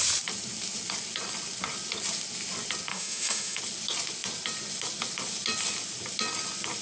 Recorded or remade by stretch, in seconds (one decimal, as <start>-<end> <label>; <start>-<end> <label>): 0.0-2.9 recorded; 2.9-3.6 remade; 3.6-6.8 recorded